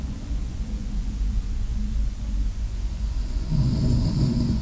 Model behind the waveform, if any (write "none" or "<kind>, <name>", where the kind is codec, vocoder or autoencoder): vocoder, Vocos